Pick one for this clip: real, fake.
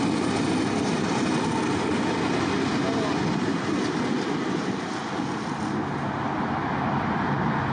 real